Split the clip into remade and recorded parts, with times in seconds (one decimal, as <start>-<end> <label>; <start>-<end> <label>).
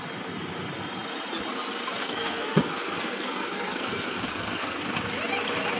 0.0-2.0 recorded; 2.0-4.8 remade; 4.8-5.8 recorded